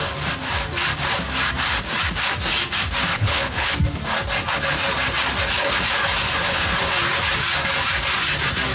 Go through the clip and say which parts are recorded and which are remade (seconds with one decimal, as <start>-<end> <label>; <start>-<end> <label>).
0.0-3.1 recorded; 3.1-3.7 remade; 3.7-8.7 recorded